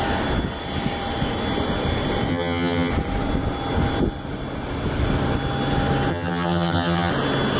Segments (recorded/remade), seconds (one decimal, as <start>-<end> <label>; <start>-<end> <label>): 0.0-2.3 recorded; 2.3-2.9 remade; 2.9-6.1 recorded; 6.1-7.1 remade; 7.1-7.6 recorded